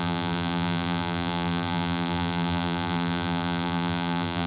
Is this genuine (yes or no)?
no